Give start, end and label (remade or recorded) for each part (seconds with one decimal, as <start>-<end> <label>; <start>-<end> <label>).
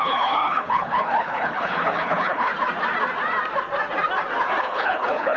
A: 0.0-2.5 remade; 2.5-4.6 recorded; 4.6-5.4 remade